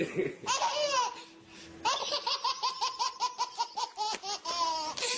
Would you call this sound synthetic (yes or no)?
no